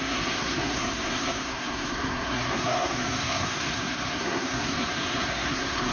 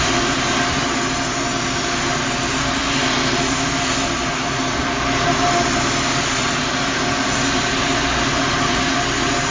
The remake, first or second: first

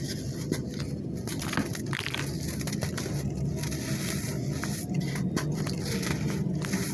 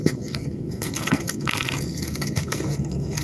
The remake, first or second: second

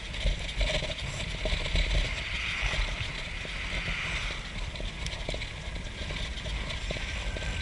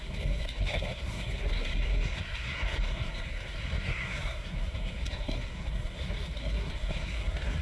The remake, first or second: second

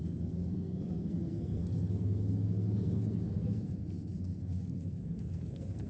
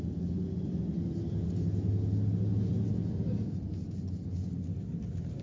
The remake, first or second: first